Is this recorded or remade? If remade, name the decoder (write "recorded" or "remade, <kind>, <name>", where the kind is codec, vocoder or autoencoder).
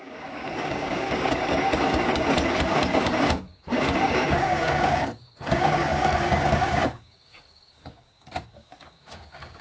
remade, codec, DAC